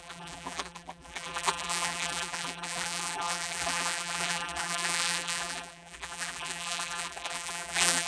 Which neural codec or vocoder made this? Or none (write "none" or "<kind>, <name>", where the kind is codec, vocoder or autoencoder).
vocoder, BigVGAN v2